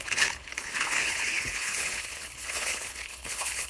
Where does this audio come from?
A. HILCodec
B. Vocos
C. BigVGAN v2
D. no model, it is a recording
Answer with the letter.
A